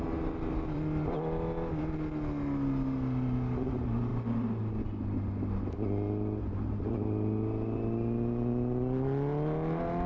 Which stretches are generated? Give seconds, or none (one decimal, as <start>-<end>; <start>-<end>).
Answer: none